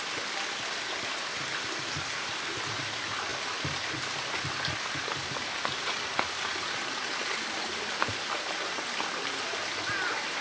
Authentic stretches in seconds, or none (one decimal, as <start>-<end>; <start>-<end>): 0.0-10.4